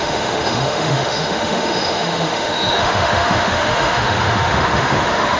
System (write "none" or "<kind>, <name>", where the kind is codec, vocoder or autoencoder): autoencoder, DAC-VAE